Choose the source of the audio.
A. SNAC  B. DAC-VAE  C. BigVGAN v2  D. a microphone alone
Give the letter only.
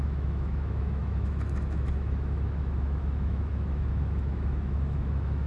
B